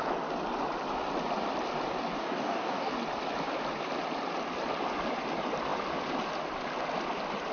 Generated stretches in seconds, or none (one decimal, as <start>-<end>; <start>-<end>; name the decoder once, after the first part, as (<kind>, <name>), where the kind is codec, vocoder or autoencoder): 2.2-2.9 (codec, DAC)